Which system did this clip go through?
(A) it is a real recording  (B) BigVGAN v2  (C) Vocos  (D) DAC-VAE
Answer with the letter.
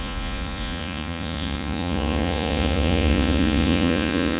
C